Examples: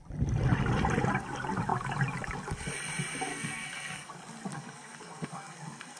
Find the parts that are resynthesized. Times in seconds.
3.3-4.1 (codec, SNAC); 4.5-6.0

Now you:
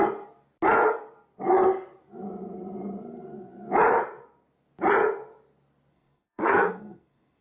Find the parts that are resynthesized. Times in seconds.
5.9-7.4 (codec, SNAC)

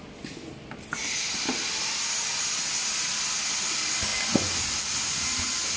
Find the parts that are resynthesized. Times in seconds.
none

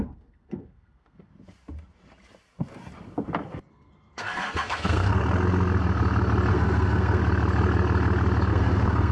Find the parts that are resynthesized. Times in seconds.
0.0-1.3 (codec, SNAC); 3.7-5.2; 6.5-7.2; 8.5-9.1